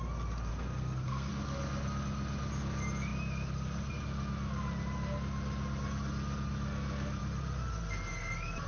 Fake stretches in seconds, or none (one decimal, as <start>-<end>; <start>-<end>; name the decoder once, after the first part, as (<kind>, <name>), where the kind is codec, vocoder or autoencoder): 0.5-1.3 (codec, SNAC)